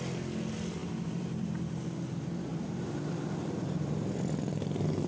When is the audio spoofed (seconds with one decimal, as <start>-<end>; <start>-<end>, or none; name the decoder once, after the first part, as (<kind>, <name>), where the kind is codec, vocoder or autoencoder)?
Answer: 0.8-1.8 (vocoder, BigVGAN v2); 2.5-3.2